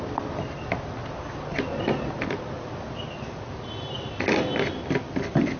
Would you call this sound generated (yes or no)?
no